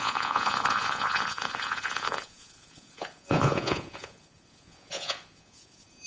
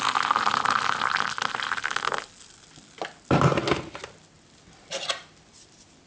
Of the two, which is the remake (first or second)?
first